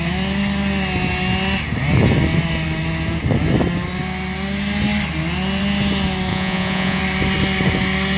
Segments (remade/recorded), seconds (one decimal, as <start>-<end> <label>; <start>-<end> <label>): 0.0-6.3 recorded; 6.3-7.0 remade; 7.0-8.2 recorded